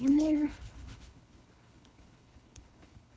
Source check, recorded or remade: remade